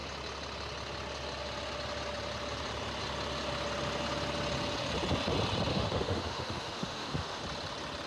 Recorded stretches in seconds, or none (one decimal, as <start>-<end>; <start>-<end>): 0.0-5.7; 7.4-8.1